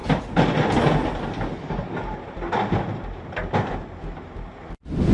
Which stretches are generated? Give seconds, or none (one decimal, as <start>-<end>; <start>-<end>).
none